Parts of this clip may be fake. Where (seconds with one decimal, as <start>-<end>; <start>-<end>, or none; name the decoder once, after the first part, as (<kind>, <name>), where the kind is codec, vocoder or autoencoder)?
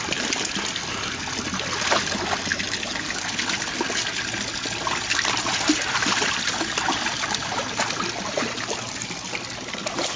none